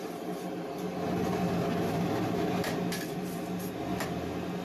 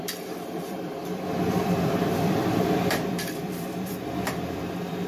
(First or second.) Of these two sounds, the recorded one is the first